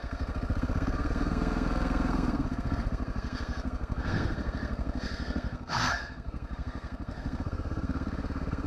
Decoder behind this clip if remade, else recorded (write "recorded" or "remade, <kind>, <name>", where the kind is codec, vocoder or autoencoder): remade, codec, SNAC